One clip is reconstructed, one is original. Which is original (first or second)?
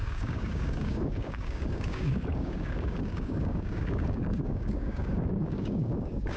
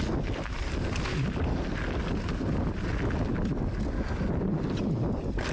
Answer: second